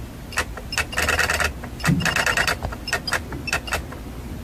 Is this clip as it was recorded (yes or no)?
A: yes